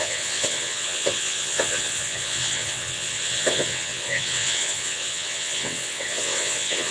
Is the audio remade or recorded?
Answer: remade